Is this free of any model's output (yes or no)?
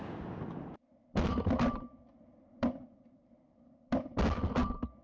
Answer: yes